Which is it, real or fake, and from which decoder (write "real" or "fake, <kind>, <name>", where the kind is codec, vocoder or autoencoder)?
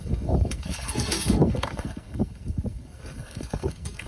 fake, codec, SNAC